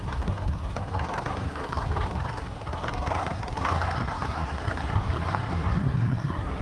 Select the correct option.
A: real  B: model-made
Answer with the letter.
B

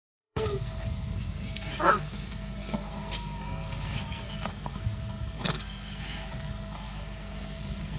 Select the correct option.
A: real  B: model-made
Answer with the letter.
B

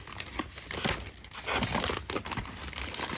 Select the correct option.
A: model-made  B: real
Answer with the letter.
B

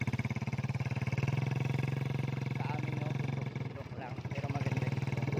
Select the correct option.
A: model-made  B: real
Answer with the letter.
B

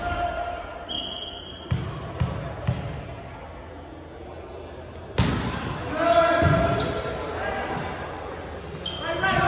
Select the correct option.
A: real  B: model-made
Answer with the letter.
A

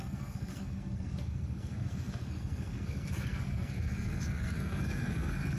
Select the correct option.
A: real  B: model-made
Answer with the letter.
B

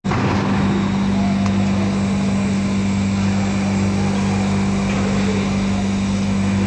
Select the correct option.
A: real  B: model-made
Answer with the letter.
A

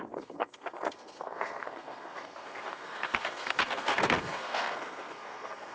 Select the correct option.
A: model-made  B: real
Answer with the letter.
A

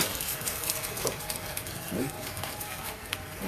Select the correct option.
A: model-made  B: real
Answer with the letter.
A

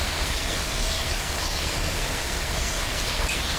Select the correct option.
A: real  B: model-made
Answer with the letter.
B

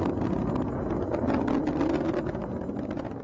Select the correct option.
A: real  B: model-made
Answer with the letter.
A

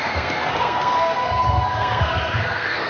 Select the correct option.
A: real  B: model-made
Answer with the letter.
B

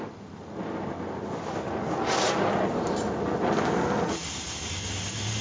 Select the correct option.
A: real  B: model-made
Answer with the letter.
A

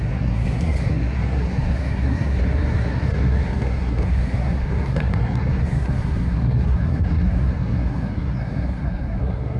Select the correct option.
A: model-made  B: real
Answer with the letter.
A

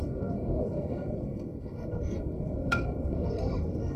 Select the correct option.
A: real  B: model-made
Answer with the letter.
B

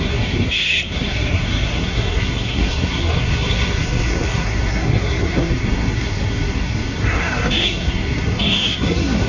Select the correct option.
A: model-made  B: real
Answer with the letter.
A